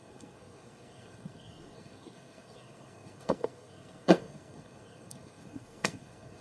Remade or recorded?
remade